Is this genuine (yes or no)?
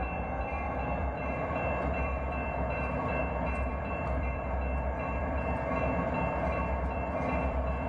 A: no